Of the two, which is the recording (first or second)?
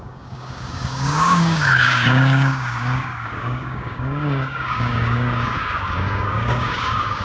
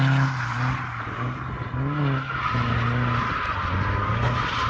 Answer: second